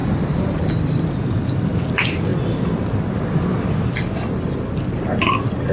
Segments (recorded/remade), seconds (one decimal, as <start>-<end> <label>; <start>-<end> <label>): 0.0-5.7 recorded